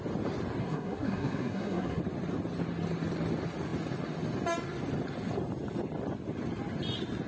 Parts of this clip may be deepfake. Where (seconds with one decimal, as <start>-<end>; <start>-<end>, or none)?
0.6-2.0